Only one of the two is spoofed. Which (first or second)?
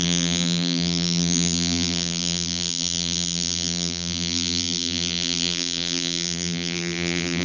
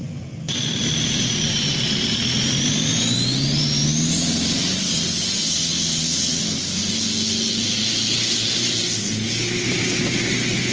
first